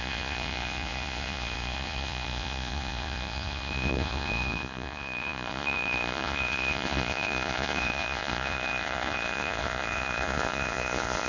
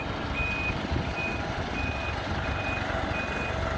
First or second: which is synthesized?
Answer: first